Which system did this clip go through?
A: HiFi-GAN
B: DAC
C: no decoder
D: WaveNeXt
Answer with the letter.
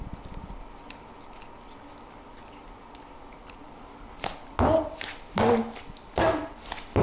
C